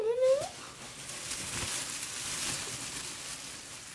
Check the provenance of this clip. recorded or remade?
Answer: recorded